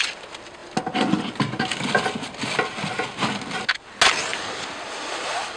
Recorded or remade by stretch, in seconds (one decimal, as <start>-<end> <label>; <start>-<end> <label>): 0.0-5.6 recorded